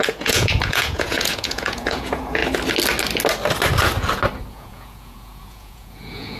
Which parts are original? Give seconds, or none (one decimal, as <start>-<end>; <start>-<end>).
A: 2.4-4.5

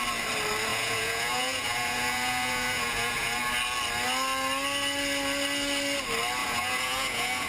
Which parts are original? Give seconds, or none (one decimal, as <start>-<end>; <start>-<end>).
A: 0.0-0.7; 3.4-6.4

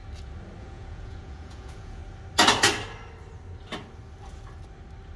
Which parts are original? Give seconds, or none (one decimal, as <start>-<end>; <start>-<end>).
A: 0.0-0.6; 2.0-5.2

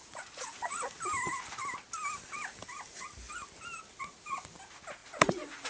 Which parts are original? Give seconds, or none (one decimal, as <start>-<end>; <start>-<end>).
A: 1.0-5.0

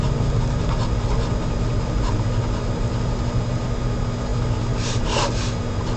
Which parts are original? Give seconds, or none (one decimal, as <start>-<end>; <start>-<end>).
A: 0.0-6.0

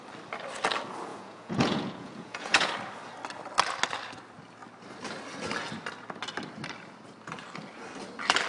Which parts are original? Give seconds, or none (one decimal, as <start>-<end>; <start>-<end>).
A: 0.0-1.1; 2.7-8.5

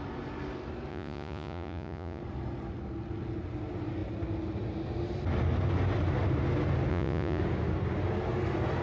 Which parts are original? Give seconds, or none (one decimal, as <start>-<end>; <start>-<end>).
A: 0.0-0.9; 2.2-6.9; 7.4-8.8